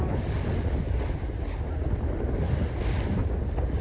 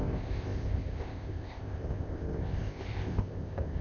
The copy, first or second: second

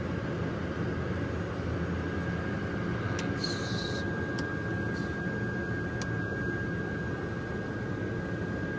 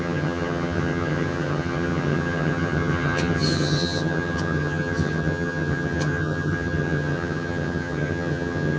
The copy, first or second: second